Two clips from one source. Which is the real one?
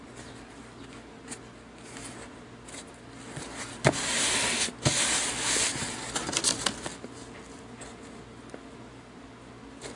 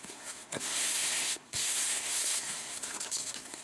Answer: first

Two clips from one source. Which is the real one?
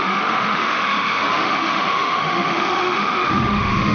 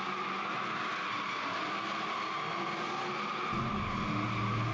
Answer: second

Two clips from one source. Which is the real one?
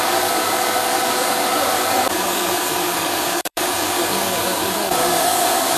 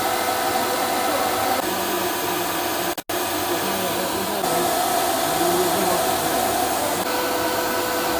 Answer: second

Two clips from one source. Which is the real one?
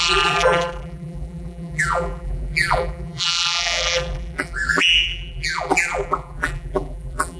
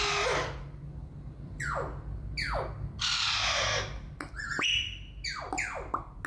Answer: second